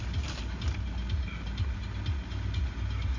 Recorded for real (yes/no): yes